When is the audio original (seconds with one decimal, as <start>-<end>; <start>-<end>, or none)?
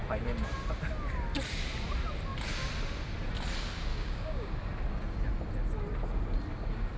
0.0-3.9; 4.5-7.0